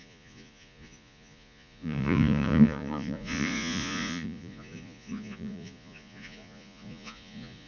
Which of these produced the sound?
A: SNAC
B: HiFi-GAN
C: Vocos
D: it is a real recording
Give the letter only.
C